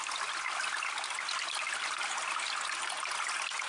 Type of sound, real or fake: real